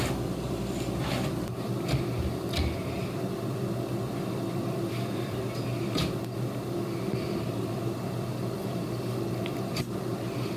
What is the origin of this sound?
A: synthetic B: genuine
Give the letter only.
A